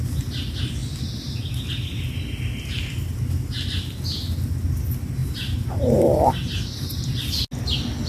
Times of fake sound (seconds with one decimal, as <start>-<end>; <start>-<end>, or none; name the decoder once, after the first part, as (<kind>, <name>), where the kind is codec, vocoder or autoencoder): none